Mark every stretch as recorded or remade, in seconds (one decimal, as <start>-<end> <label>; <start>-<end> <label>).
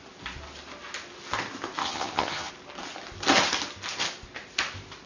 0.0-1.8 recorded; 1.8-2.5 remade; 2.5-5.1 recorded